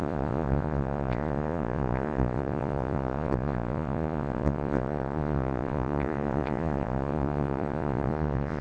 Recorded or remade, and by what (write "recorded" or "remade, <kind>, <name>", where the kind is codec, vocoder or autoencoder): remade, vocoder, Vocos